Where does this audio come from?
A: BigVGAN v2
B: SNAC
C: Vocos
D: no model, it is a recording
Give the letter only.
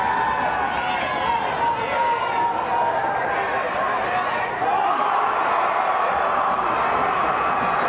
D